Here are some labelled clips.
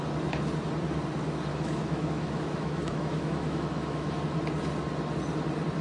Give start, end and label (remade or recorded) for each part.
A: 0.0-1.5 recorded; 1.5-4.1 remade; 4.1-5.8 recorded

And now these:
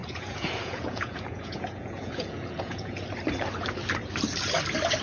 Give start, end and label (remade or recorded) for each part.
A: 0.0-3.0 remade; 3.0-5.0 recorded

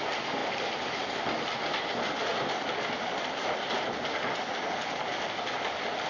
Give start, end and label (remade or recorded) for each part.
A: 0.0-6.1 recorded

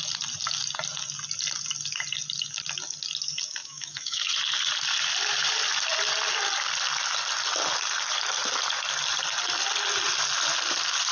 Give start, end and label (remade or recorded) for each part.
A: 0.0-3.6 recorded; 3.6-4.3 remade; 4.3-11.1 recorded

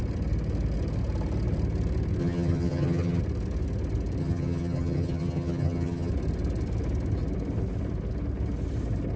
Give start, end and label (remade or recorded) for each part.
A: 0.0-2.2 recorded; 2.2-3.2 remade; 3.2-4.2 recorded; 4.2-6.1 remade; 6.1-9.2 recorded

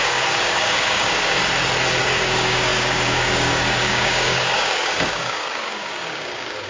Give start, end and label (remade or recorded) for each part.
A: 0.0-1.4 remade; 1.4-2.0 recorded; 2.0-6.7 remade

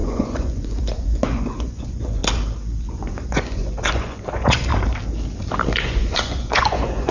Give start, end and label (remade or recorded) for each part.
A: 0.0-2.2 remade; 2.2-2.9 recorded; 2.9-4.7 remade; 4.7-5.7 recorded; 5.7-7.1 remade

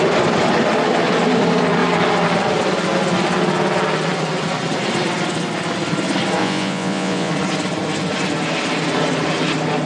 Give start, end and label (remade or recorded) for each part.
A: 0.0-6.4 recorded; 6.4-7.3 remade; 7.3-9.9 recorded